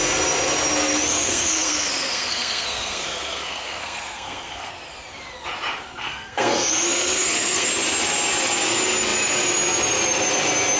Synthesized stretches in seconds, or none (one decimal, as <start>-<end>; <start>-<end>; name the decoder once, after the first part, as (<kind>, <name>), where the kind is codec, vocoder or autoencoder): 1.1-4.7 (codec, SNAC); 6.0-7.7